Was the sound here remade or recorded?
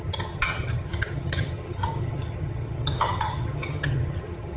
remade